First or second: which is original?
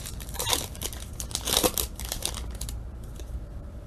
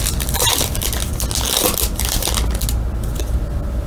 second